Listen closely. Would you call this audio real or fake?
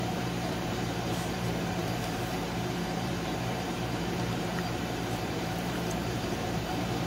fake